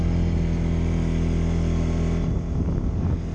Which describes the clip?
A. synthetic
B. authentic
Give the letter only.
B